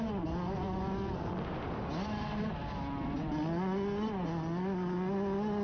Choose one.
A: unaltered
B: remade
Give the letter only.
A